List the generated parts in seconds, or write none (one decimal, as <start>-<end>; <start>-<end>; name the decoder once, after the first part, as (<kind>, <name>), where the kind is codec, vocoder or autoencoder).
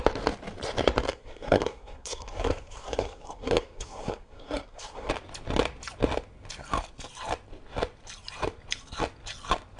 1.1-5.1 (codec, SNAC)